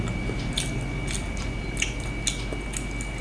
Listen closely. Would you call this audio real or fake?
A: real